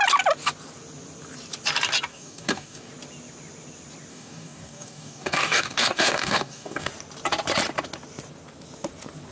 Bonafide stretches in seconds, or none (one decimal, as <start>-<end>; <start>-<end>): 0.0-2.1; 2.9-4.1; 6.9-9.3